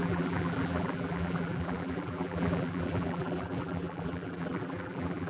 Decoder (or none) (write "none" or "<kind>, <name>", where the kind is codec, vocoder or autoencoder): vocoder, BigVGAN v2